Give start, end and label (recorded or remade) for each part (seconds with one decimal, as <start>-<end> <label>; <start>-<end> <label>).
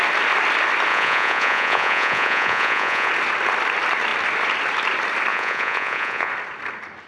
0.0-0.9 recorded; 0.9-3.1 remade; 3.1-5.3 recorded; 5.3-6.3 remade; 6.3-7.1 recorded